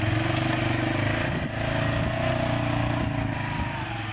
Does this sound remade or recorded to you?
recorded